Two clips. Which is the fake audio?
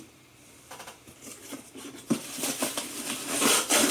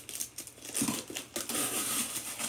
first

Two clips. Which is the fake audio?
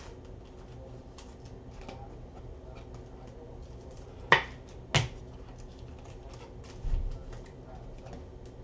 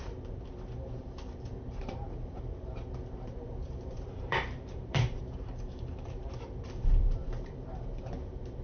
second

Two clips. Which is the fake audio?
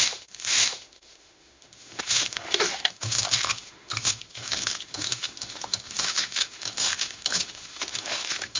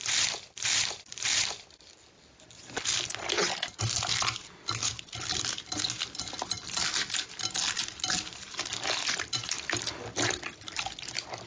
first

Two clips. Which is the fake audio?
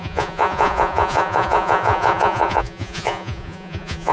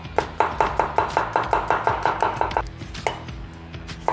first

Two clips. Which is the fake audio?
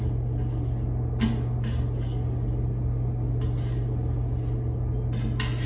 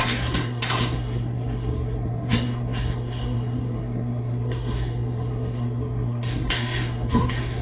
second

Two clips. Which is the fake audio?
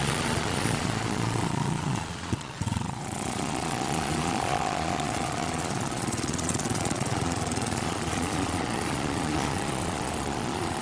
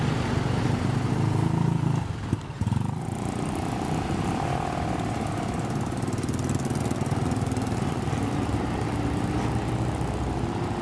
first